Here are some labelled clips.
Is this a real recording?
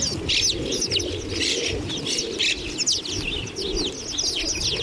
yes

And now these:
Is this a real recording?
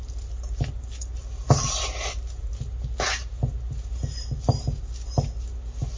yes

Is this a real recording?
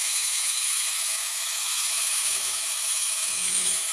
no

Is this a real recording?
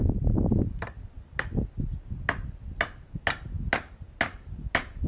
yes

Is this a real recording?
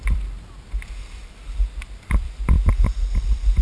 yes